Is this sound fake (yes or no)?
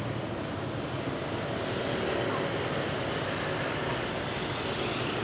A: no